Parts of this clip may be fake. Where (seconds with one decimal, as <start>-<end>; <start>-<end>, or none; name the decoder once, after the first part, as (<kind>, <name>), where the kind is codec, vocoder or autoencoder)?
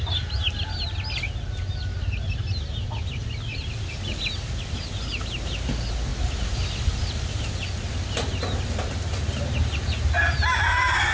none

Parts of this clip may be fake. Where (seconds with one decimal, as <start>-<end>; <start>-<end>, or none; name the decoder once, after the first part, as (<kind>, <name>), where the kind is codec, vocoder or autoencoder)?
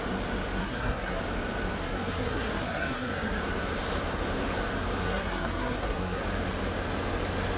0.6-1.2 (codec, SNAC); 1.8-3.4; 5.0-6.2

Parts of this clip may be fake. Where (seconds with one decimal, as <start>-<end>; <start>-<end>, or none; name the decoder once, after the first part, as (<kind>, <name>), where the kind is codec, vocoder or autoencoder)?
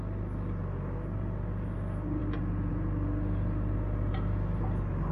none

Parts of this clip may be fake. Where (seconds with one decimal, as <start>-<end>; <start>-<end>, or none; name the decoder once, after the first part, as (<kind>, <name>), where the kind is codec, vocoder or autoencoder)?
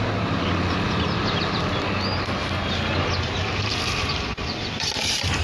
none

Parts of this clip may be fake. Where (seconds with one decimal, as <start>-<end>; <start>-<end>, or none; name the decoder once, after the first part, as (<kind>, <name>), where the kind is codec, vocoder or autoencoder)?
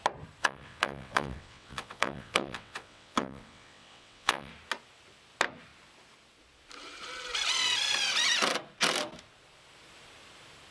0.4-4.5 (vocoder, WaveNeXt)